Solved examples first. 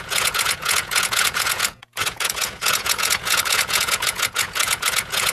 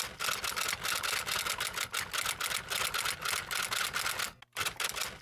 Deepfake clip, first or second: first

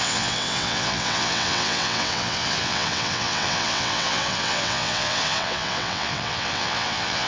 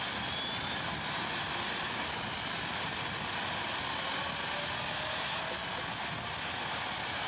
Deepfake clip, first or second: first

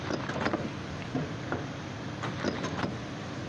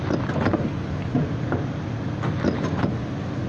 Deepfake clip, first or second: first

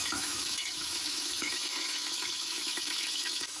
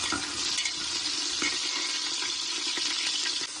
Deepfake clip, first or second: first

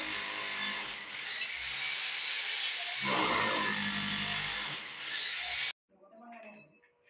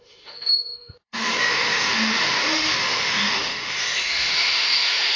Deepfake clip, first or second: second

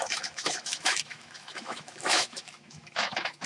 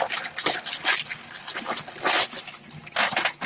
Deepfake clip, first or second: first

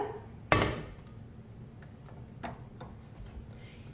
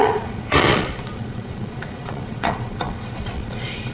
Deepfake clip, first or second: second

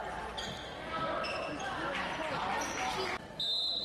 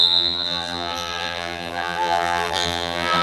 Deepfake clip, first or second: second